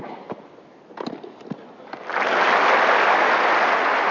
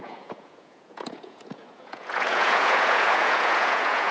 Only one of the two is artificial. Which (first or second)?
second